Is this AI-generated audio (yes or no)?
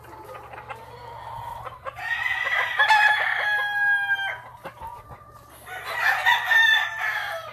no